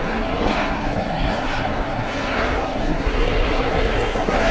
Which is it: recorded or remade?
remade